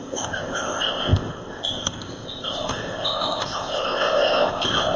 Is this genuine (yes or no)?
no